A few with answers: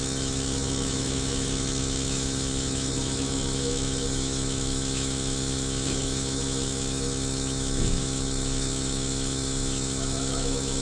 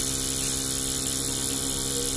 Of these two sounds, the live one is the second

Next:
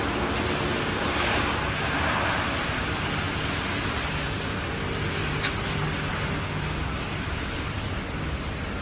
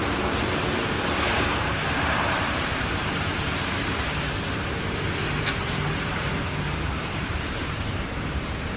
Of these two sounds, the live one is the first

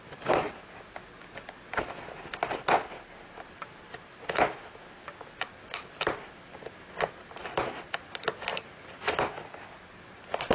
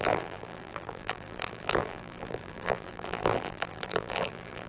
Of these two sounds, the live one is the first